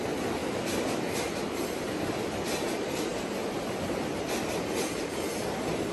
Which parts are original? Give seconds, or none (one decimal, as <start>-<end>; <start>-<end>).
0.4-2.1; 3.1-5.0